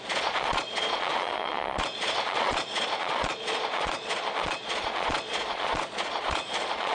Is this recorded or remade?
remade